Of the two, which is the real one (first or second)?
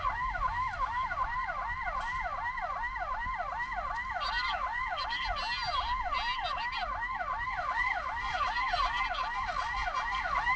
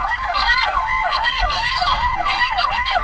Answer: first